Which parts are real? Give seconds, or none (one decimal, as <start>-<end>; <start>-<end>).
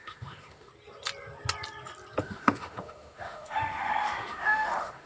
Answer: 0.7-2.2